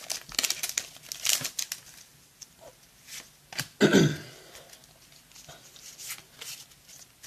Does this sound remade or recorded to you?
recorded